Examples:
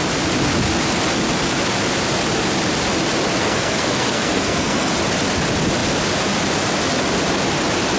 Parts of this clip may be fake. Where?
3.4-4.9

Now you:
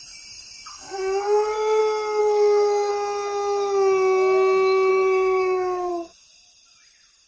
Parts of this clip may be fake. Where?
0.7-1.8; 2.2-2.9; 4.9-5.9

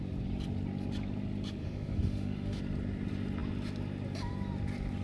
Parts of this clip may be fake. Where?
1.6-2.6

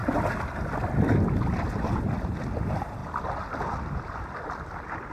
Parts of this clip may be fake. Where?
3.0-4.5

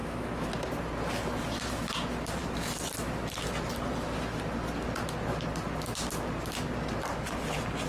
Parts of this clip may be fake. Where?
0.0-0.5

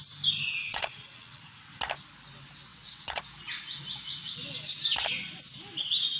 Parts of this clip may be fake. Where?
0.6-1.4; 2.7-3.2

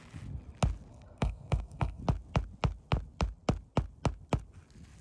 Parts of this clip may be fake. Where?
0.9-2.0

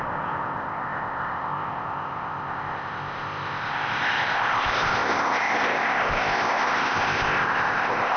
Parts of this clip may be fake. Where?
0.0-8.2